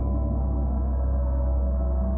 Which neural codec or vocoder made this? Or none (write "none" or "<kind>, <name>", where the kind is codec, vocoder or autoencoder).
codec, SNAC